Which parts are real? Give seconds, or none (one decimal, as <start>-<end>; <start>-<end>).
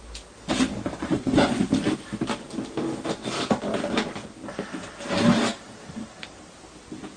0.0-1.1; 1.6-7.2